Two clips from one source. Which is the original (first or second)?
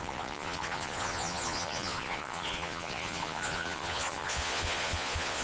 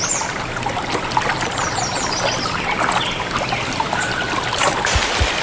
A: second